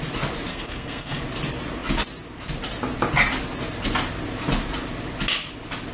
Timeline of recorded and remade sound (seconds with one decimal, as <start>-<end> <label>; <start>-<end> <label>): 0.0-0.5 recorded; 0.5-1.2 remade; 1.2-5.9 recorded